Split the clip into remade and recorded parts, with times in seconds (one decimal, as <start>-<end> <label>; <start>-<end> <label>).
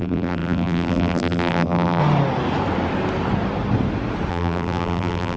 0.0-2.0 remade; 2.0-4.3 recorded; 4.3-5.4 remade